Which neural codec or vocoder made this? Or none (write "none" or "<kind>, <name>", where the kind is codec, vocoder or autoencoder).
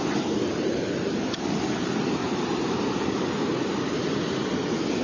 none